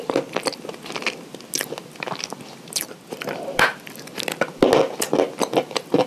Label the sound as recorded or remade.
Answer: recorded